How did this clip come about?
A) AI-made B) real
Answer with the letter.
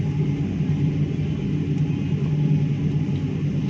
B